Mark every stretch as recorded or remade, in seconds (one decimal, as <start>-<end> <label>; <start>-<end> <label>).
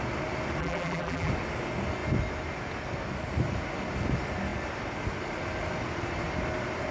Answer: 0.0-0.6 recorded; 0.6-1.3 remade; 1.3-6.9 recorded